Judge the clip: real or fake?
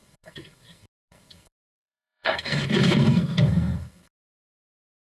fake